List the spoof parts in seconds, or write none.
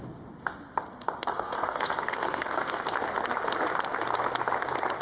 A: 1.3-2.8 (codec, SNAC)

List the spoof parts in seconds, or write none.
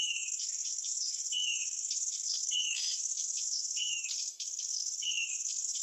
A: 0.0-5.8 (codec, SNAC)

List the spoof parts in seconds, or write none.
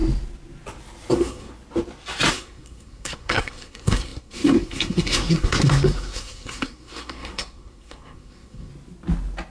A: 1.1-1.5 (codec, SNAC); 2.3-8.7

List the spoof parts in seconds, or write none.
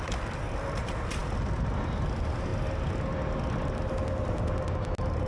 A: none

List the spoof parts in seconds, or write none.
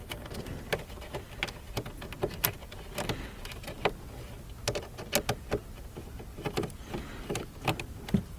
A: none